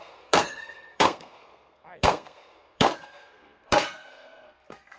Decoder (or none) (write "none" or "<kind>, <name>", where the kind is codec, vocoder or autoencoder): codec, SNAC